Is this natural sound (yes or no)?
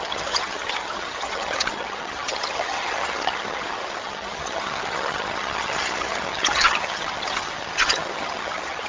no